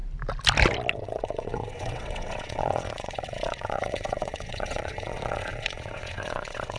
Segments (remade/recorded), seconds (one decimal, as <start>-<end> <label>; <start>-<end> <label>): 0.0-0.9 recorded; 0.9-6.8 remade